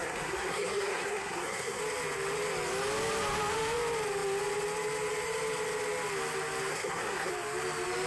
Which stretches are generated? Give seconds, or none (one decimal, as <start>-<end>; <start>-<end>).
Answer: 0.0-1.8; 6.7-7.3